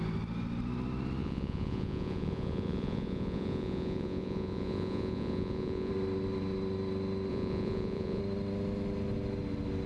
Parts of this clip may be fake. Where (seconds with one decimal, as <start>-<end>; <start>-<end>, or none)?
1.2-5.9; 7.3-8.2